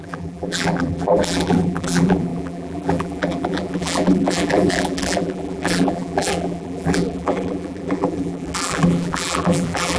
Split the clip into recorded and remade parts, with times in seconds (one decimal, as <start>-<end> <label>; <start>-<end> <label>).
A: 0.0-10.0 remade